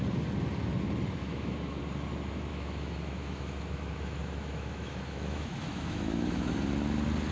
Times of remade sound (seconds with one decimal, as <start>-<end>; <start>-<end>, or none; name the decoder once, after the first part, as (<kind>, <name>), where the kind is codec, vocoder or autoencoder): 1.2-1.8 (autoencoder, DAC-VAE); 2.5-6.5